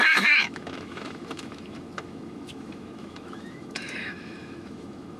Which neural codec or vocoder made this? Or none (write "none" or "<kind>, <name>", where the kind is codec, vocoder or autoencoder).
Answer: autoencoder, DAC-VAE